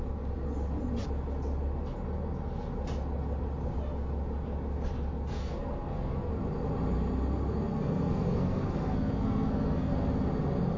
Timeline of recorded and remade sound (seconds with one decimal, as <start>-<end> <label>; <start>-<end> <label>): 0.0-5.4 recorded; 5.4-6.3 remade; 6.3-7.7 recorded; 7.7-9.9 remade; 9.9-10.8 recorded